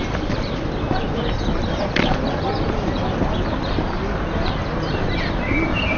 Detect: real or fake real